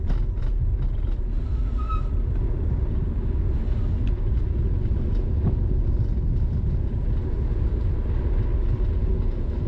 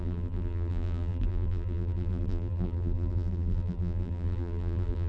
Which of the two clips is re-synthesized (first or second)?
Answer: second